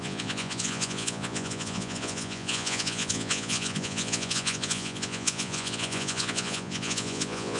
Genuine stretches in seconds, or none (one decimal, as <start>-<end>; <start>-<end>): none